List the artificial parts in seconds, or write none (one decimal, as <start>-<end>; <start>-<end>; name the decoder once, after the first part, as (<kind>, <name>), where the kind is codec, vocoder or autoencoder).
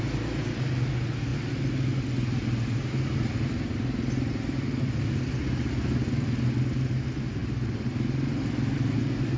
none